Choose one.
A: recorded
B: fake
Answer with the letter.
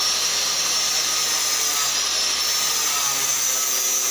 A